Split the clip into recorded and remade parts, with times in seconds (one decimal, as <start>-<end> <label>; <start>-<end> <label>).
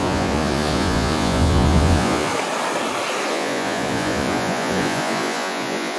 0.0-2.3 remade; 2.3-3.3 recorded; 3.3-6.0 remade